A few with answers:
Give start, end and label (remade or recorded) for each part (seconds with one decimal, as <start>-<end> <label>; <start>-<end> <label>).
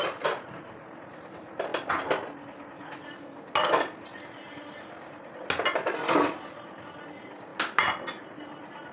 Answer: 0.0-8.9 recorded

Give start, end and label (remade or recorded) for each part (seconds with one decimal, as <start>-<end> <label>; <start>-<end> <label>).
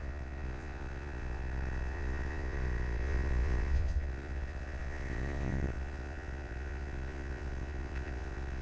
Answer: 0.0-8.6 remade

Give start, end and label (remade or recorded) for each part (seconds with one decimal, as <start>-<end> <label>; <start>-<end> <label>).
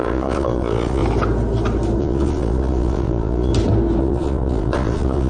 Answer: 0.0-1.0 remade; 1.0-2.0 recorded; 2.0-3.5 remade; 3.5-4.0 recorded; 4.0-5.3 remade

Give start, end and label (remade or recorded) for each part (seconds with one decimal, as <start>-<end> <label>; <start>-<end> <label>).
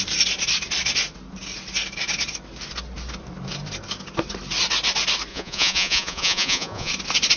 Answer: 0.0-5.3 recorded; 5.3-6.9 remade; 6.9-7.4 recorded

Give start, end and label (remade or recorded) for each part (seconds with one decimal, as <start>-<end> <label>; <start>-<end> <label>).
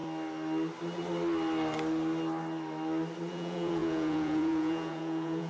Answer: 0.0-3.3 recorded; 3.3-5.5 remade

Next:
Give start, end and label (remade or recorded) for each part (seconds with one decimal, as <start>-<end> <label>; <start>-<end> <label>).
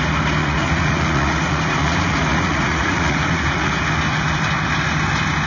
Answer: 0.0-0.4 recorded; 0.4-3.7 remade; 3.7-5.5 recorded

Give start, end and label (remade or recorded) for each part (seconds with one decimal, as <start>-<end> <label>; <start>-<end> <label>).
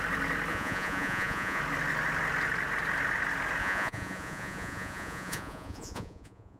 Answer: 0.0-0.5 recorded; 0.5-1.6 remade; 1.6-3.6 recorded; 3.6-6.6 remade